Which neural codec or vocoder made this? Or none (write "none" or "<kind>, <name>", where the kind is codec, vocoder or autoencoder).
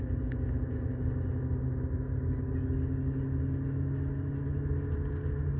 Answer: none